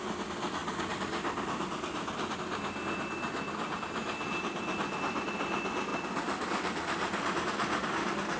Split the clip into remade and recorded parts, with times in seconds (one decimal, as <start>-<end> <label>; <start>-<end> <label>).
0.0-8.4 recorded